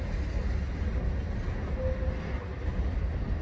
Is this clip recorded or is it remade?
recorded